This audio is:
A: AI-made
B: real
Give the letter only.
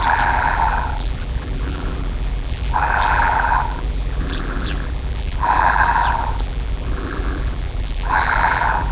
A